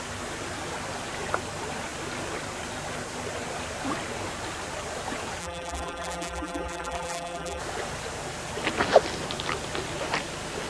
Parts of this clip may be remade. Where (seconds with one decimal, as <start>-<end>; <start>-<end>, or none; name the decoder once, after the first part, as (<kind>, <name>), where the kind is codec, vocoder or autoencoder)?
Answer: 5.4-7.6 (vocoder, BigVGAN v2)